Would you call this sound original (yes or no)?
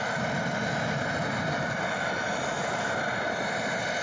yes